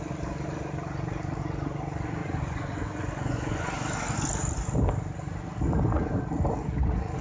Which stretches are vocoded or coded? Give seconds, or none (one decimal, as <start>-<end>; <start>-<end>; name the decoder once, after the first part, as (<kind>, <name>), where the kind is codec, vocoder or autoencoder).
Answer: 2.2-3.7 (vocoder, Vocos)